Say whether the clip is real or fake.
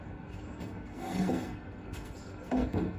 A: fake